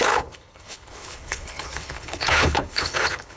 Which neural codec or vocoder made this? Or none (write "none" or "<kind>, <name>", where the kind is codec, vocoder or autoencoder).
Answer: codec, HILCodec